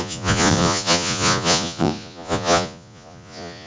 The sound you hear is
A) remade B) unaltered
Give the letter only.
A